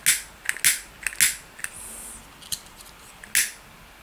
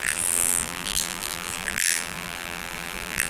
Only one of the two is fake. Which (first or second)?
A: second